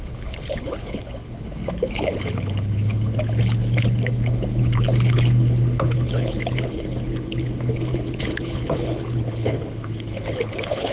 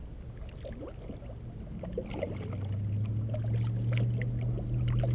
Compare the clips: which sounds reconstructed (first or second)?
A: first